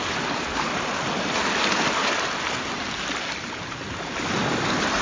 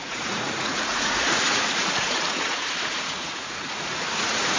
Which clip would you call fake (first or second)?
second